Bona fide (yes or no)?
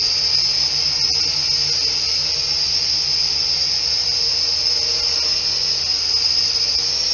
yes